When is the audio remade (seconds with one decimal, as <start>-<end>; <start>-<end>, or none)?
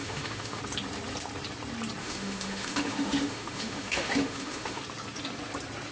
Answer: 0.0-0.6; 2.0-4.8